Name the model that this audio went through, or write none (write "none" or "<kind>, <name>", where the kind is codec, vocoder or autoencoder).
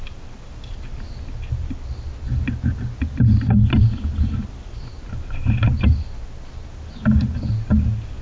none